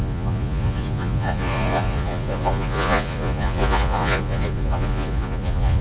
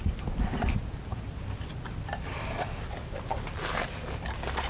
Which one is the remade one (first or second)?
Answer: first